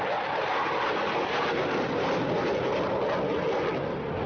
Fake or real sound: real